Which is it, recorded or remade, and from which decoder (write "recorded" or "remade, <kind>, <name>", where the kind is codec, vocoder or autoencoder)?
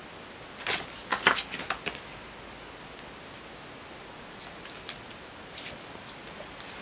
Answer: recorded